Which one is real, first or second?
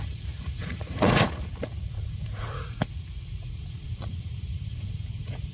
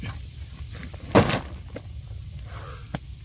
second